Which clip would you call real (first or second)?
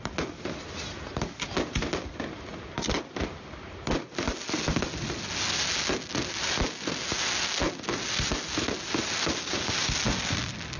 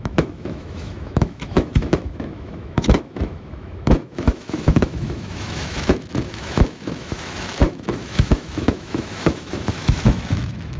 first